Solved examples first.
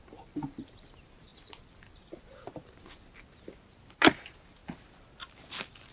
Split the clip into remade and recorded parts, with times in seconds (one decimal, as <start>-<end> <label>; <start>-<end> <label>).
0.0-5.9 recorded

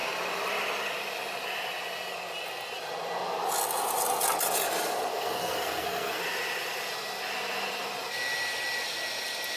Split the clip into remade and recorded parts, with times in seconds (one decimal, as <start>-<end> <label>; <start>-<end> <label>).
0.0-5.1 recorded; 5.1-6.2 remade; 6.2-9.6 recorded

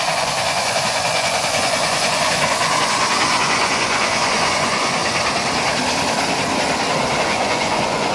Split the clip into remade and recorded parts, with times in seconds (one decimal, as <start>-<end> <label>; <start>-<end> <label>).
0.0-5.0 remade; 5.0-7.2 recorded; 7.2-8.1 remade

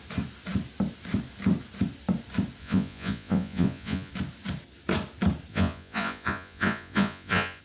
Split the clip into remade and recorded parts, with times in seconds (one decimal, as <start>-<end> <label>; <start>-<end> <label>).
0.0-2.6 recorded; 2.6-4.1 remade; 4.1-5.5 recorded; 5.5-7.6 remade